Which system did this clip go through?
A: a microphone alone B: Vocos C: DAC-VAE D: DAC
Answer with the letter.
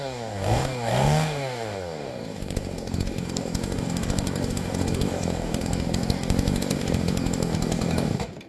D